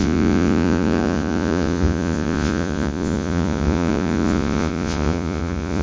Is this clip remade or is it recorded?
remade